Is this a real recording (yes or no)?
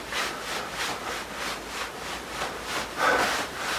yes